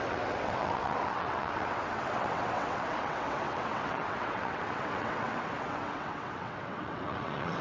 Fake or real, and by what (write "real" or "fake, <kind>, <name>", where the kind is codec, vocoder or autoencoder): fake, vocoder, WaveNeXt